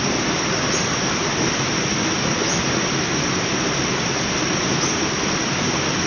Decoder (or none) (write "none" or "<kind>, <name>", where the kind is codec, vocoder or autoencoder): none